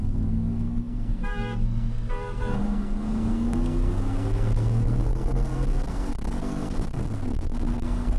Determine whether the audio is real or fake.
fake